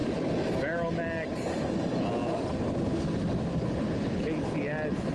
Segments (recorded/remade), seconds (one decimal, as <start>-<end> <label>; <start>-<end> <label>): 0.0-5.1 recorded